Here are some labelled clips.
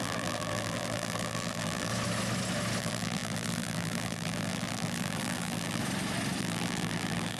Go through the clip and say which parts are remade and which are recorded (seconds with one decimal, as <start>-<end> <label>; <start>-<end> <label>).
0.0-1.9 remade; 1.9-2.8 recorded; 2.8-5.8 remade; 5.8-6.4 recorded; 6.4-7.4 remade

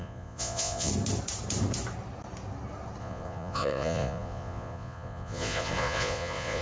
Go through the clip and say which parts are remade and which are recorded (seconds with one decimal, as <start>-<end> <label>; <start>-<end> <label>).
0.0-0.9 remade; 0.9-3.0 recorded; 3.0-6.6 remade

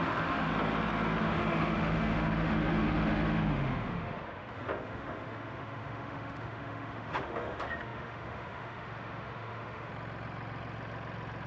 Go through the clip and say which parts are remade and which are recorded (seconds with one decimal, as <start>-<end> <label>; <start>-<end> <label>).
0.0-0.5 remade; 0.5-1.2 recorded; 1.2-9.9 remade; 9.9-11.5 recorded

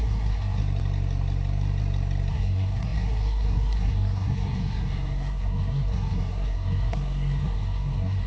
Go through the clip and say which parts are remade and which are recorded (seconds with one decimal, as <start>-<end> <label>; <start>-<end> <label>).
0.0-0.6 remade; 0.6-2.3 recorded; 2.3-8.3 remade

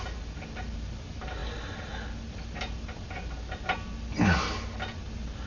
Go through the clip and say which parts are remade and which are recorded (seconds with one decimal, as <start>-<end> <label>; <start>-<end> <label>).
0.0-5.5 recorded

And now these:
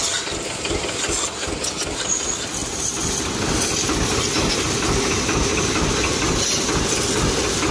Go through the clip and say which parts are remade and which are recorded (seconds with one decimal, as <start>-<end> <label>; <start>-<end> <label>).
0.0-2.6 recorded; 2.6-3.3 remade; 3.3-7.7 recorded